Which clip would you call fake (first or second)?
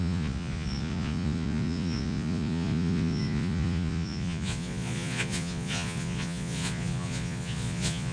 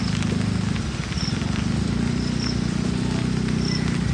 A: first